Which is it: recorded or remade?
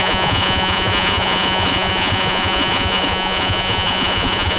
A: remade